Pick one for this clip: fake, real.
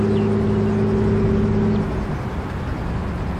real